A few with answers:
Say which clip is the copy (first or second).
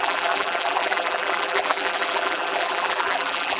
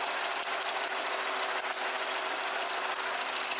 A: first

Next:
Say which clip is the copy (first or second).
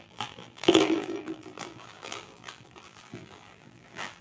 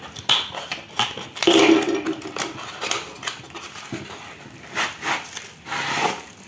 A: first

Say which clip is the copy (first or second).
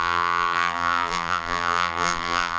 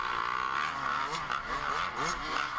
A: first